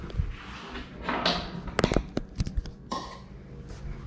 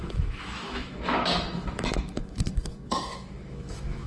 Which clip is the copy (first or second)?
second